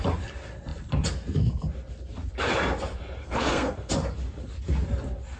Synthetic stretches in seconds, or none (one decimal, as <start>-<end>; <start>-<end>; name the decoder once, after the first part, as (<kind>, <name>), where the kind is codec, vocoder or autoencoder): 3.2-3.9 (codec, SNAC)